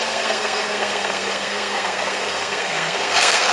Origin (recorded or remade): remade